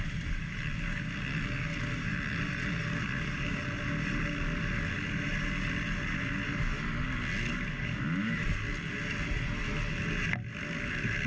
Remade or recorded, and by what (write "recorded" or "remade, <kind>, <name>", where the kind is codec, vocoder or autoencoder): recorded